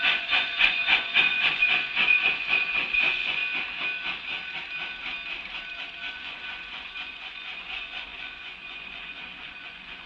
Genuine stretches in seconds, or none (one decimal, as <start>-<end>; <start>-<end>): 3.4-6.1